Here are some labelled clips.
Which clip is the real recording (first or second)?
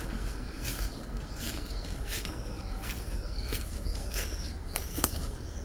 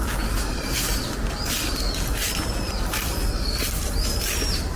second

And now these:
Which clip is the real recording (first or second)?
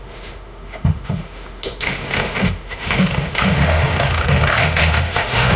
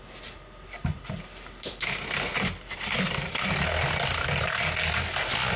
second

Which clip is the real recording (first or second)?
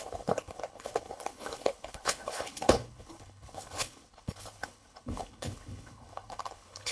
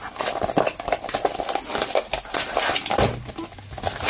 second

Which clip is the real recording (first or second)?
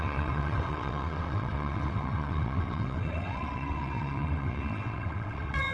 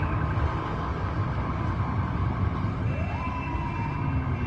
second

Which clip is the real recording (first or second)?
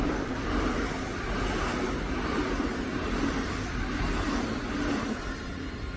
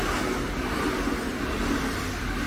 second